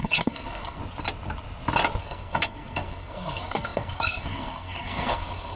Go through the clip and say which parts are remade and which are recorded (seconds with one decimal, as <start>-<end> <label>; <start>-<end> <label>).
0.0-0.8 remade; 0.8-2.0 recorded; 2.0-5.6 remade